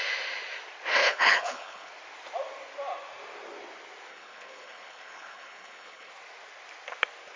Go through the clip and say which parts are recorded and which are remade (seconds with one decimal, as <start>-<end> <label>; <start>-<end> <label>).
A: 0.0-1.0 recorded; 1.0-1.9 remade; 1.9-4.1 recorded; 4.1-6.1 remade; 6.1-7.4 recorded